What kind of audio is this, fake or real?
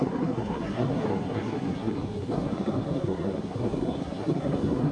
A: fake